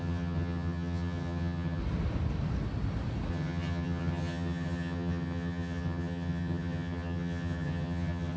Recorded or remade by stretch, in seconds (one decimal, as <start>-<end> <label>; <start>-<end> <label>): 0.0-1.8 remade; 1.8-3.3 recorded; 3.3-8.4 remade